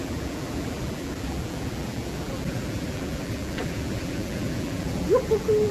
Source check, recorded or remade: remade